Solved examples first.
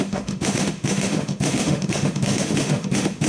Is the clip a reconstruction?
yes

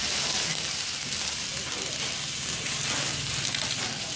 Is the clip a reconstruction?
no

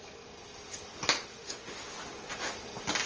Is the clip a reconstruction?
no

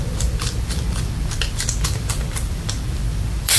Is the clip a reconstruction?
yes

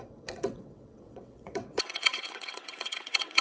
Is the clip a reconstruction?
yes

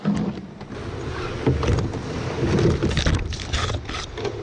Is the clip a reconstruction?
no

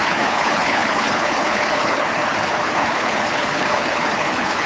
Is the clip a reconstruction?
yes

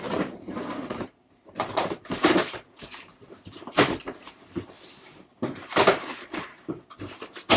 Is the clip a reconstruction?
yes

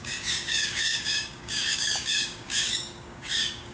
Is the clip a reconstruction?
yes